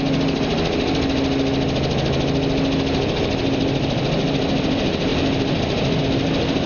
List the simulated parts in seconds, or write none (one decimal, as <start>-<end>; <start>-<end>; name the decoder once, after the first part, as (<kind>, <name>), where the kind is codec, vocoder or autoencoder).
none